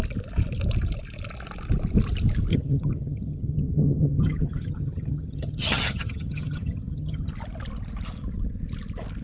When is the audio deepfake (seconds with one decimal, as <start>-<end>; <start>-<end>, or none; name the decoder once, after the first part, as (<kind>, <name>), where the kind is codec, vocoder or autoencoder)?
2.5-7.3 (vocoder, HiFi-GAN)